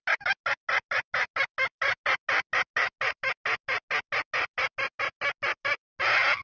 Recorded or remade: recorded